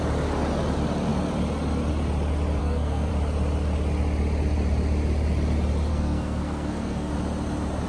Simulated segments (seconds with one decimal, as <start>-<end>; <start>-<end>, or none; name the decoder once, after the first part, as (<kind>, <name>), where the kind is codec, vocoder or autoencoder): 2.6-3.1 (codec, SNAC); 5.9-7.1